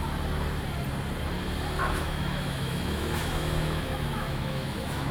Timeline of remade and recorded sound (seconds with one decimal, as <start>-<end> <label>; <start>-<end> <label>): 0.0-1.8 recorded; 1.8-5.1 remade